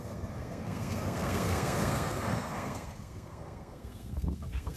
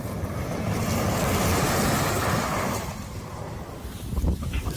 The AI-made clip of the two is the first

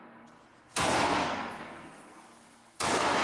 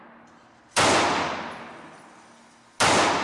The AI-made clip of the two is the first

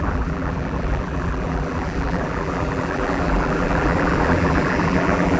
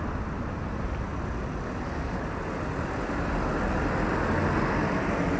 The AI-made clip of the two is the first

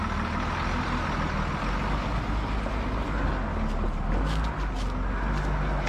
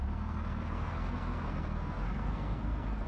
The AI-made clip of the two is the second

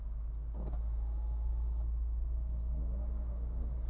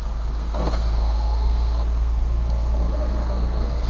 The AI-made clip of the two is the second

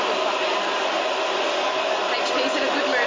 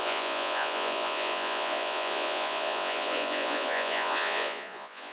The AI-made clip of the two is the second